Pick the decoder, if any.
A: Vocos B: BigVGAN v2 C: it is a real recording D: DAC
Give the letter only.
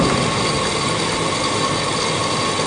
C